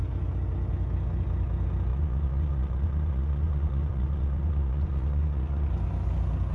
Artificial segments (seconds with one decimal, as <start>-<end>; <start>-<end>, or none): 1.9-5.7